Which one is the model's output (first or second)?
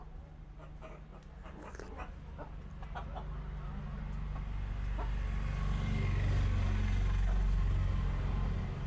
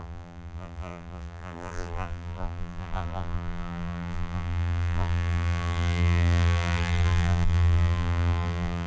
second